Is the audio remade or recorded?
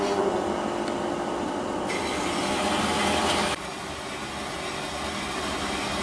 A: recorded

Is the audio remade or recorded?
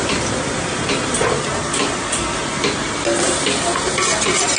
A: recorded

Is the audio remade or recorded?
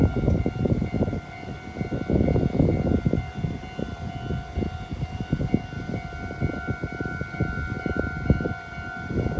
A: recorded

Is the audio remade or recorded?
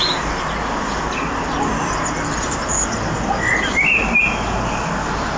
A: recorded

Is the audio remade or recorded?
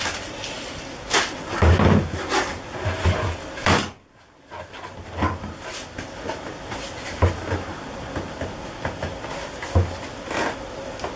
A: recorded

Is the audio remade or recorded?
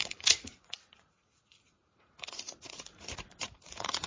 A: remade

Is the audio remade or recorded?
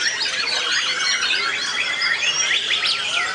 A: recorded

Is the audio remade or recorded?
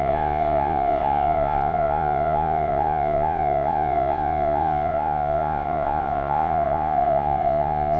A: remade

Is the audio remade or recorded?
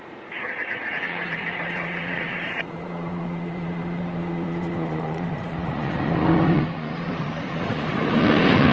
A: remade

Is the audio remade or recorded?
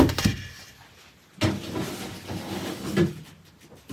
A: recorded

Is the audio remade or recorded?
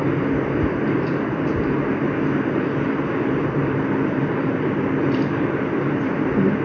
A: recorded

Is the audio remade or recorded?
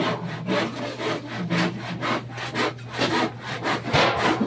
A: recorded